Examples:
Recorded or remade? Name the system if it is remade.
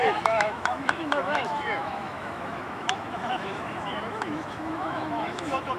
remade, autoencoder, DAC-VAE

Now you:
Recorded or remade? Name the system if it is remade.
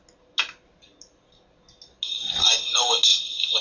recorded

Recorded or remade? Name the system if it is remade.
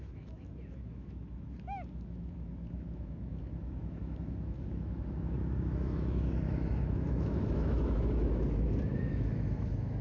remade, autoencoder, DAC-VAE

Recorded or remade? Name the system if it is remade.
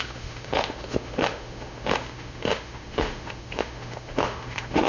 remade, autoencoder, DAC-VAE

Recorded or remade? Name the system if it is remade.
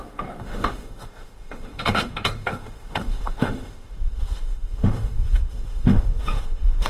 remade, autoencoder, DAC-VAE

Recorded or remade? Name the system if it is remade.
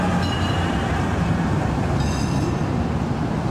recorded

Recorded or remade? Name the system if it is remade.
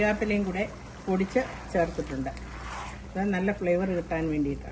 recorded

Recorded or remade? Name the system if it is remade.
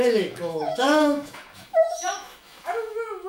remade, autoencoder, DAC-VAE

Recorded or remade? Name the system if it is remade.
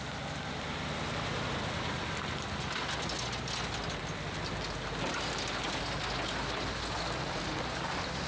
recorded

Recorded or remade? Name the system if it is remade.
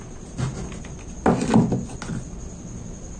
recorded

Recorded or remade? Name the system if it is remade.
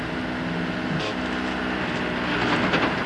recorded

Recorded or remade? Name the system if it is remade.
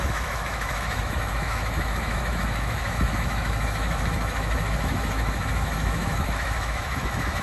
remade, autoencoder, DAC-VAE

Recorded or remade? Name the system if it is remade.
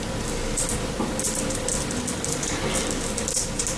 recorded